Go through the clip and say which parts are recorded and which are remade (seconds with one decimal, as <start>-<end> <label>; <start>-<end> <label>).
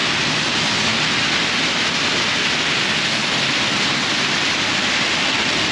0.0-5.7 recorded